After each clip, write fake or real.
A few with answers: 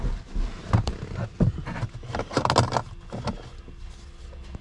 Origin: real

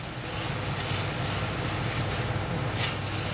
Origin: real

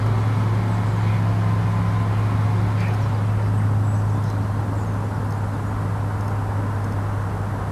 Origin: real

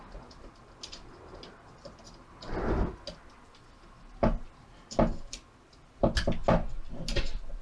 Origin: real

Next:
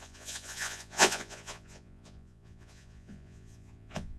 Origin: fake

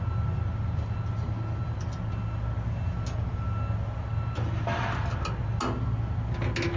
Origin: real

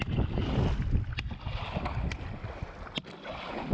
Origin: real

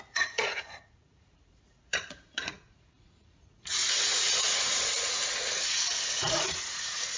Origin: fake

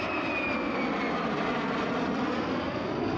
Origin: real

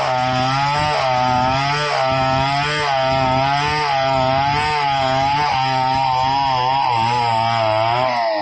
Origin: real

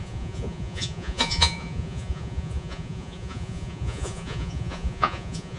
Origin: fake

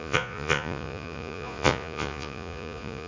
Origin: fake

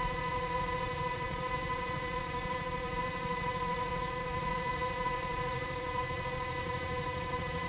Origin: fake